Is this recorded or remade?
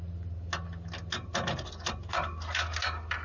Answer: recorded